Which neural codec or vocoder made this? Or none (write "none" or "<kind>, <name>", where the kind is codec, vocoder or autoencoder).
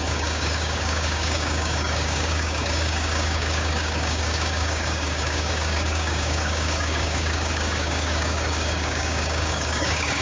codec, DAC